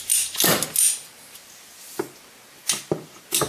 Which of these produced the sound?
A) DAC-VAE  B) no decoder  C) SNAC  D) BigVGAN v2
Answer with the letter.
B